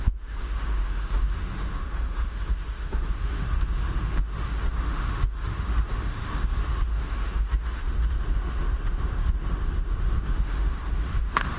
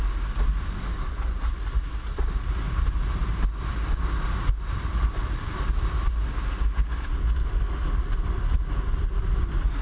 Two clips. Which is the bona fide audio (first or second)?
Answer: second